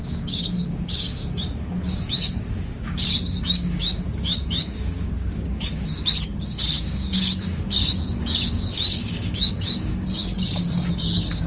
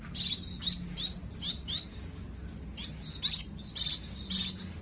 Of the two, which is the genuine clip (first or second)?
second